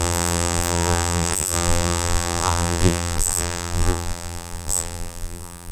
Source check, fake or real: fake